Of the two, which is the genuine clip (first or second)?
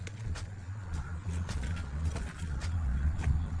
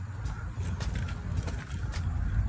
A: second